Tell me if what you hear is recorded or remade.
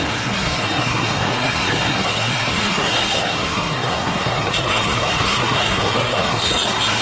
remade